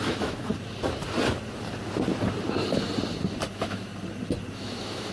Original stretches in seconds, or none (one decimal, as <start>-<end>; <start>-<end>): 0.5-3.5; 3.9-4.5